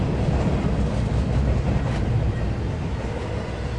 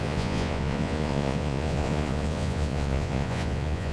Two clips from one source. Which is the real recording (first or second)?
first